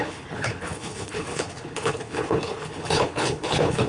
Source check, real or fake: fake